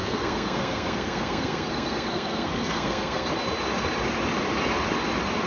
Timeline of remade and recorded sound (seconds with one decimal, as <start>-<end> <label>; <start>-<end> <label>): 0.0-3.3 remade; 3.3-5.5 recorded